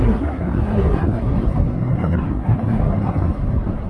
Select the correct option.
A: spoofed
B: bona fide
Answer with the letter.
A